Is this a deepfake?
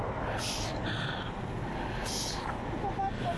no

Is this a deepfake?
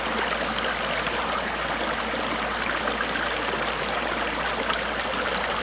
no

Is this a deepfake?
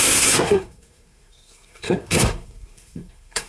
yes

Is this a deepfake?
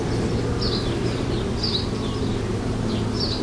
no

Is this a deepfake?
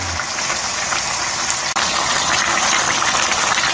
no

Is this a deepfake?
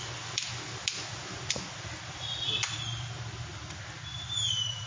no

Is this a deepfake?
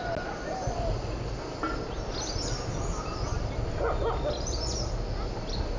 no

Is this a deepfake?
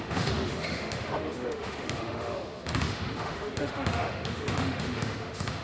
yes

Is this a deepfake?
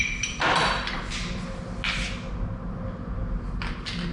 no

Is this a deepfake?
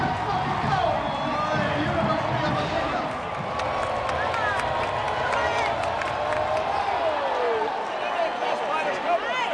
no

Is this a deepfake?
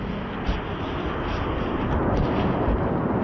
no